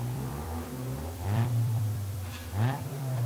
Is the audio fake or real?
fake